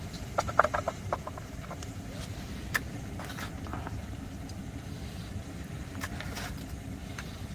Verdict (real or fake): real